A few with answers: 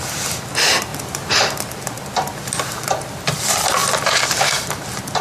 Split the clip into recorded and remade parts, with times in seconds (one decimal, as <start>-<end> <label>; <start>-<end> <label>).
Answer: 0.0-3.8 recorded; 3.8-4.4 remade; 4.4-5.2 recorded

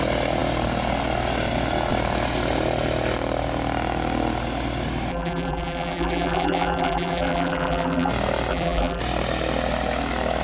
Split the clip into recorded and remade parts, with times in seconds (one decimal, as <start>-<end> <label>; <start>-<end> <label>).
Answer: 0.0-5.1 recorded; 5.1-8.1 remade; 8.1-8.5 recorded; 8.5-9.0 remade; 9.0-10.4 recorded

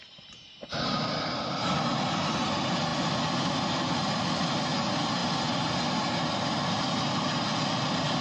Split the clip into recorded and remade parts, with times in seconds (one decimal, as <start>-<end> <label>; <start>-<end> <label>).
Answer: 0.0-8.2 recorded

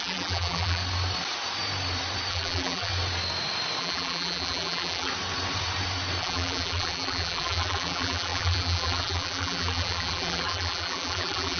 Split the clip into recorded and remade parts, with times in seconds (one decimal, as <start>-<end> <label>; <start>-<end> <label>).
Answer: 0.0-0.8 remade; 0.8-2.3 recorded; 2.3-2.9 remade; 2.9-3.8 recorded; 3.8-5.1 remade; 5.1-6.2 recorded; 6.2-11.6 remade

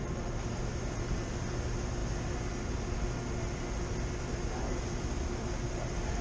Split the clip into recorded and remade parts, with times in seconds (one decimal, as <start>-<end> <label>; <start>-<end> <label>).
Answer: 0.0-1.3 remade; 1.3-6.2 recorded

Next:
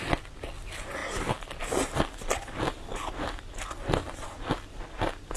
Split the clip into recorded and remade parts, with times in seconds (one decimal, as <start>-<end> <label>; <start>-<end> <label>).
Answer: 0.0-5.4 recorded

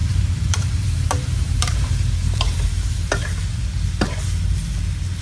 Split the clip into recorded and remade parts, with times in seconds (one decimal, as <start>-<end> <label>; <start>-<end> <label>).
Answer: 0.0-3.1 remade; 3.1-5.2 recorded